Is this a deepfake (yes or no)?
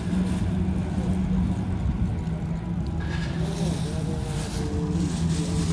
no